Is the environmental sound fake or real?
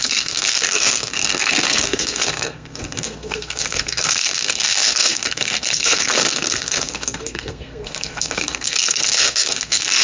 fake